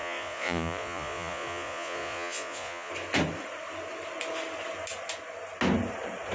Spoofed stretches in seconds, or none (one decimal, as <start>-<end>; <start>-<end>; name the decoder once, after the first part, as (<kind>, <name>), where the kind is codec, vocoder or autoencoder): 0.0-2.9 (vocoder, Vocos)